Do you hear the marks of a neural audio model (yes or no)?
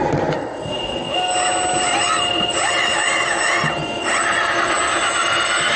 no